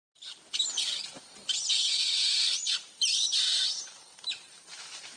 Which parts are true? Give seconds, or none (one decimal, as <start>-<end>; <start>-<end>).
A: none